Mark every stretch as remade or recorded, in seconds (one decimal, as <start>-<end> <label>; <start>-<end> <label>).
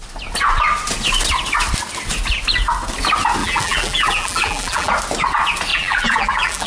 0.0-3.4 recorded; 3.4-4.9 remade; 4.9-5.7 recorded; 5.7-6.7 remade